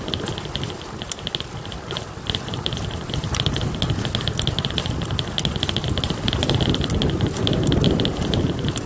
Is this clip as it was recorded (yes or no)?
yes